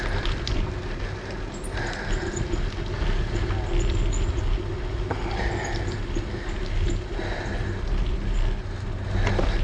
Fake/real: real